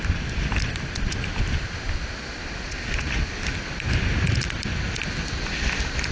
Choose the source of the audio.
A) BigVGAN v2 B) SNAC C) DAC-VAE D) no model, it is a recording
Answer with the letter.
D